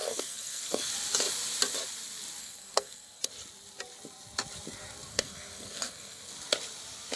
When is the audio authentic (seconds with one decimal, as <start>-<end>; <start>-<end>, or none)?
0.9-2.4; 3.3-5.1; 6.3-7.2